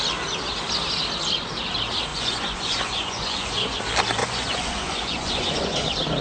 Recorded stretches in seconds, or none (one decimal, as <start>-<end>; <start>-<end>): 0.0-2.1; 3.8-4.2; 5.8-6.2

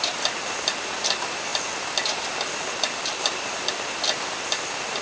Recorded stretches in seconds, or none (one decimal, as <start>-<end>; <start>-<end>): 0.0-5.0

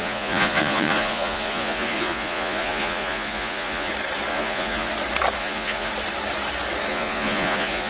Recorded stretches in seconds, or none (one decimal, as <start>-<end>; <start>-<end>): 3.9-4.3; 4.9-5.4; 5.9-6.9

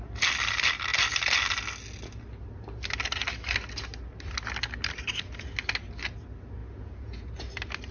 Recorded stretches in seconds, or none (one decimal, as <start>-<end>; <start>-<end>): 0.0-6.6; 7.3-7.9

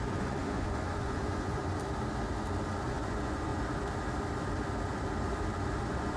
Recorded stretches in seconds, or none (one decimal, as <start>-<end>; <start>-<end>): 1.6-2.9; 3.5-5.8